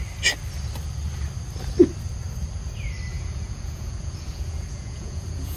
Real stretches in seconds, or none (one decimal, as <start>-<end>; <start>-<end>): 0.0-3.1